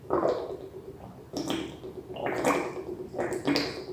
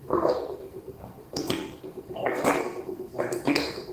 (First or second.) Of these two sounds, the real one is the first